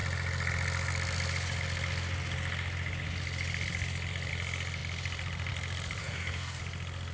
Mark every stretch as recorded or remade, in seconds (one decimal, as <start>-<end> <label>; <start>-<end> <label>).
0.0-6.0 recorded; 6.0-6.6 remade; 6.6-7.1 recorded